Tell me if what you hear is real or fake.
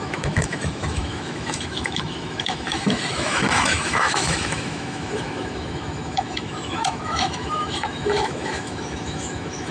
fake